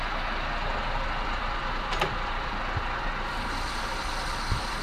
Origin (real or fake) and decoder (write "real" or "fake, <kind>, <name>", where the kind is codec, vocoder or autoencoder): fake, vocoder, BigVGAN v2